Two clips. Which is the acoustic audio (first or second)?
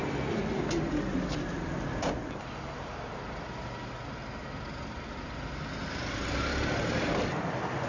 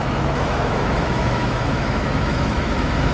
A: first